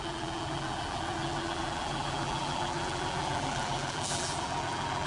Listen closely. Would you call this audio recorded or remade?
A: remade